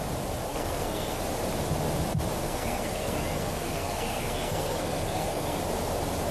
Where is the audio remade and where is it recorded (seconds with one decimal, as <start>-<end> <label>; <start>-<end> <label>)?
0.0-0.5 recorded; 0.5-1.2 remade; 1.2-2.4 recorded; 2.4-5.6 remade; 5.6-6.3 recorded